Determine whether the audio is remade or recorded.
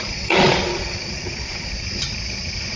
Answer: remade